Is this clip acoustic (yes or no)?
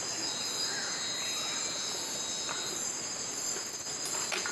yes